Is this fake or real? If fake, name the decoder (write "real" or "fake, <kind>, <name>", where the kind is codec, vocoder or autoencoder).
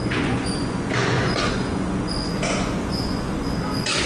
fake, vocoder, Vocos